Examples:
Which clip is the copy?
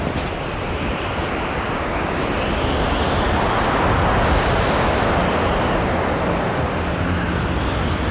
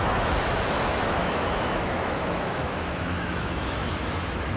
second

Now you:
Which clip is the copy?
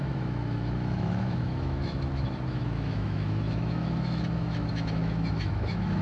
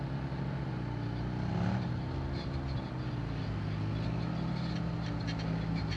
first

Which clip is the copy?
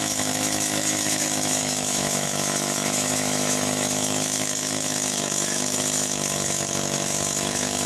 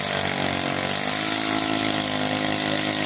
first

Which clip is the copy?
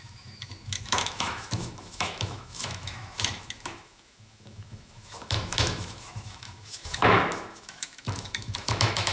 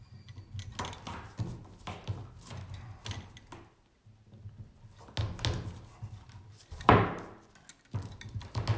first